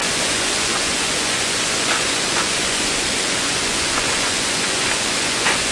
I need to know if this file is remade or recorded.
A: remade